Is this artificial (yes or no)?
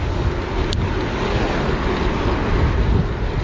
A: no